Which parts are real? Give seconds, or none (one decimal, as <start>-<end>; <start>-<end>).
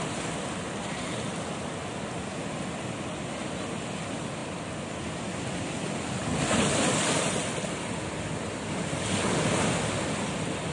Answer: 0.0-10.7